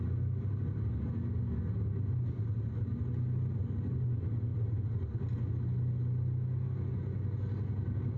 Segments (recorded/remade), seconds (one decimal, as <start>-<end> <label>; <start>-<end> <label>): 0.0-4.5 recorded; 4.5-5.5 remade; 5.5-8.2 recorded